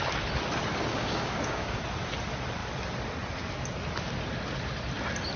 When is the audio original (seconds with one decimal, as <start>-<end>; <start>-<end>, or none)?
0.0-0.9; 1.8-5.4

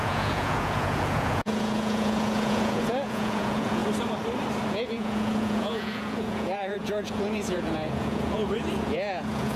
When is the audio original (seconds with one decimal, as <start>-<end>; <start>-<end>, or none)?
3.8-4.7

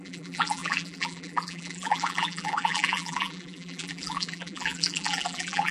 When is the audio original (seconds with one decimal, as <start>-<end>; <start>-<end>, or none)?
none

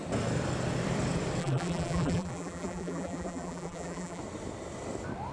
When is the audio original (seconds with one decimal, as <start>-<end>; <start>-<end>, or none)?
0.0-1.4; 4.2-5.3

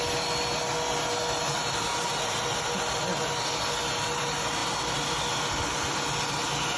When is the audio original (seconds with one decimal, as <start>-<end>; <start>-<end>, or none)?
0.0-6.8

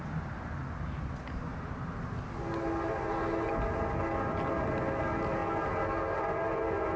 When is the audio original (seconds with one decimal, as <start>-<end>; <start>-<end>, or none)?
0.0-7.0